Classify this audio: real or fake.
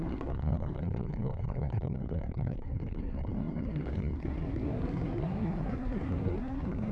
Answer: fake